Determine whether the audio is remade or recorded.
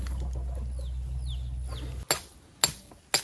recorded